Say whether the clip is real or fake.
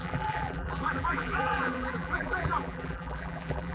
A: fake